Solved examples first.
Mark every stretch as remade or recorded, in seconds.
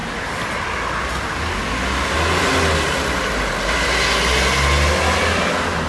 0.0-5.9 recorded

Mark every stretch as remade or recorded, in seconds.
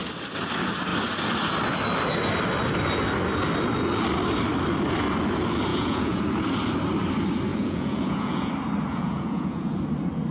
0.0-5.7 recorded; 5.7-6.2 remade; 6.2-7.5 recorded; 7.5-8.5 remade; 8.5-8.9 recorded; 8.9-9.8 remade; 9.8-10.3 recorded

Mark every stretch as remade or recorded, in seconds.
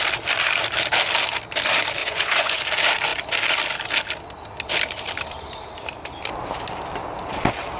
0.0-2.0 recorded; 2.0-2.6 remade; 2.6-7.8 recorded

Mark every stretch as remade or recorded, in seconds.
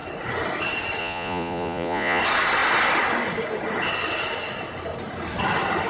0.0-1.0 recorded; 1.0-2.2 remade; 2.2-5.9 recorded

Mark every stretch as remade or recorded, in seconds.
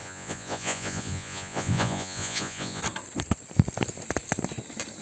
0.0-2.8 remade; 2.8-5.0 recorded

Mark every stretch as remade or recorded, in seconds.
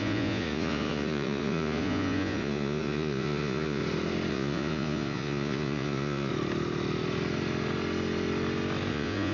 0.0-3.8 remade; 3.8-4.3 recorded; 4.3-6.3 remade; 6.3-8.9 recorded; 8.9-9.3 remade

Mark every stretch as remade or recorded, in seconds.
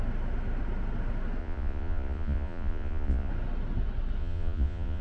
0.0-1.4 recorded; 1.4-3.3 remade; 3.3-4.2 recorded; 4.2-5.0 remade